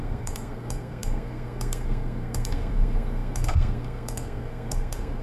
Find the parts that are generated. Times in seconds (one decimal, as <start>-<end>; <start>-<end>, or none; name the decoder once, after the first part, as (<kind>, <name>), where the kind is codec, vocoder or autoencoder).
0.0-5.2 (codec, SNAC)